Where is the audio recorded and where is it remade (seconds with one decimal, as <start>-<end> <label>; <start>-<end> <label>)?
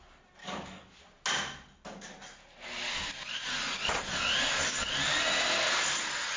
0.0-0.4 recorded; 0.4-1.0 remade; 1.0-6.4 recorded